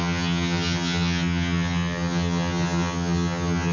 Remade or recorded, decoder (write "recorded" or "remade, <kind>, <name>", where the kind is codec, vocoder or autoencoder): remade, vocoder, HiFi-GAN